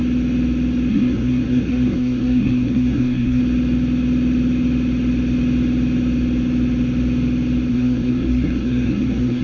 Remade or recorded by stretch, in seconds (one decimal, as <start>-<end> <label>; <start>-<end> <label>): 0.0-0.9 recorded; 0.9-3.4 remade; 3.4-7.7 recorded; 7.7-9.4 remade